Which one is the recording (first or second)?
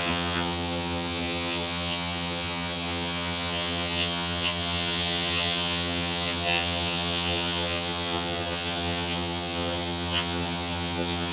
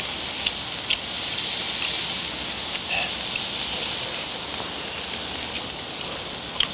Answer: second